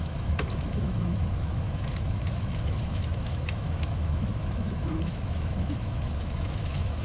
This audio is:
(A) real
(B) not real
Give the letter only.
B